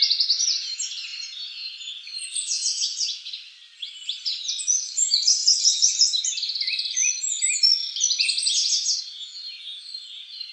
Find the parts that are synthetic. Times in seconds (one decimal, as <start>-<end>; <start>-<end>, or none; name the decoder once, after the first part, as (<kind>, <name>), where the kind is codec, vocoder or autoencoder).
none